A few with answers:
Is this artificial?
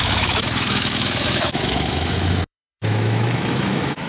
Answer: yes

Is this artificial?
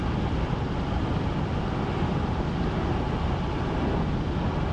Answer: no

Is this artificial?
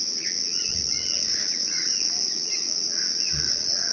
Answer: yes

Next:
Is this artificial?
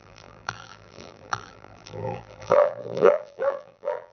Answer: yes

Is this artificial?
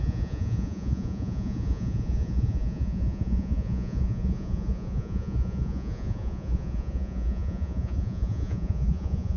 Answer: yes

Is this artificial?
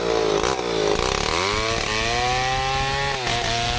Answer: no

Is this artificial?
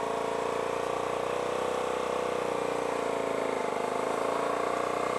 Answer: no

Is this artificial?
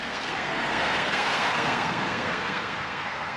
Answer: yes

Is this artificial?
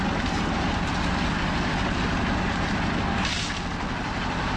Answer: no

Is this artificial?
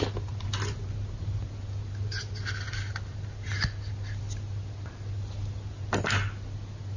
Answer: no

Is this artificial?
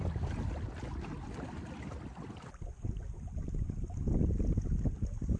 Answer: no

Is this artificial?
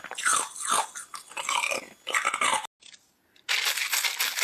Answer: no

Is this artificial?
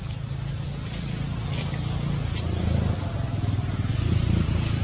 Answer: no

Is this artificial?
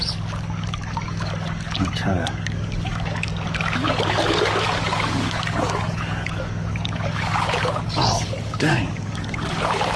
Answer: yes